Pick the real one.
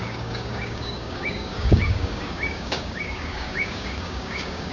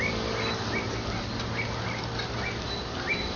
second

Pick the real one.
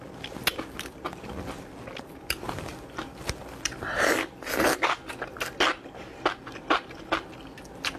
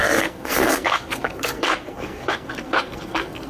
first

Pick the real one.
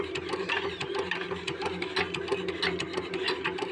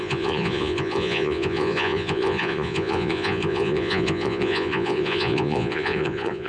first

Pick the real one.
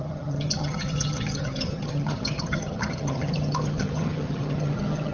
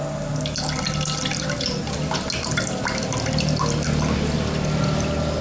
second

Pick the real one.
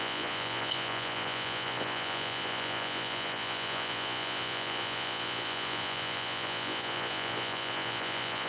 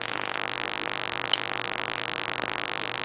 second